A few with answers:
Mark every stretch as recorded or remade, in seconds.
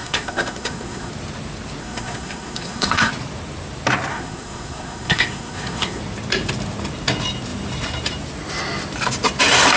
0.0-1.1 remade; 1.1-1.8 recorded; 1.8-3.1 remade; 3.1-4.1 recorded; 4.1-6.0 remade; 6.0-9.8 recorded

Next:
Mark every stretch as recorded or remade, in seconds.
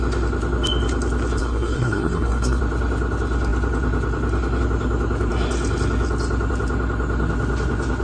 0.0-1.4 recorded; 1.4-2.6 remade; 2.6-8.0 recorded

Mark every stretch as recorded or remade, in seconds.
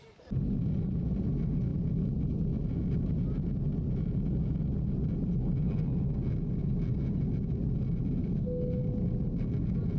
0.0-8.2 recorded; 8.2-8.8 remade; 8.8-10.0 recorded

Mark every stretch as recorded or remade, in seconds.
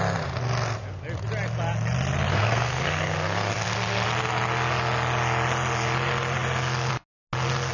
0.0-2.3 recorded; 2.3-3.6 remade; 3.6-7.7 recorded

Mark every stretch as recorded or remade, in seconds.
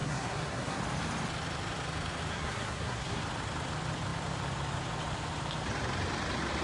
0.0-0.8 remade; 0.8-2.3 recorded; 2.3-3.2 remade; 3.2-6.6 recorded